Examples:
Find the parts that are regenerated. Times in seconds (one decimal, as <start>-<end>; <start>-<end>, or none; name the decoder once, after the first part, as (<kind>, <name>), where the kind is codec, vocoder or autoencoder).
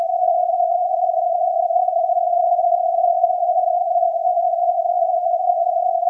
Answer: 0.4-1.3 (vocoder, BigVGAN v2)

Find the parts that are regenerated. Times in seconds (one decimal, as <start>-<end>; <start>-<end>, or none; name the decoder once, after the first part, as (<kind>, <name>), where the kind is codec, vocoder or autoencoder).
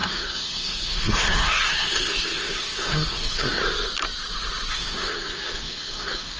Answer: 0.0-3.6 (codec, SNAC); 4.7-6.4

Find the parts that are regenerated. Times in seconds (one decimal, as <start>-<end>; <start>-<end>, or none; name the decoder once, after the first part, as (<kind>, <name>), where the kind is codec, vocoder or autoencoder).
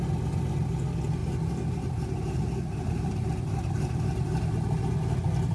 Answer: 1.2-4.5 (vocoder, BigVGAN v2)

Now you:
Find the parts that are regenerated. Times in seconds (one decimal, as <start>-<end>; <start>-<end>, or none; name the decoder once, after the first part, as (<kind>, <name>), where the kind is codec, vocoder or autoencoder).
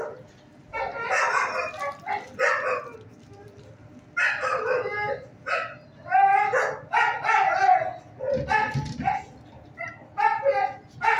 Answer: none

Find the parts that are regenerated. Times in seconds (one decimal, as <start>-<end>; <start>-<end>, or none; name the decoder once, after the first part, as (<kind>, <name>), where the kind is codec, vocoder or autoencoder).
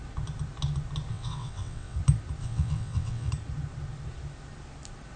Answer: 1.1-2.0 (vocoder, WaveNeXt); 2.4-3.3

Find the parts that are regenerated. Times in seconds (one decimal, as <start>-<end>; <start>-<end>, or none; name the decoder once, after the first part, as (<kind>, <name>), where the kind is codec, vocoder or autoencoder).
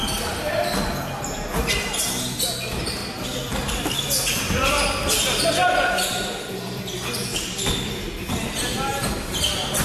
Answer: none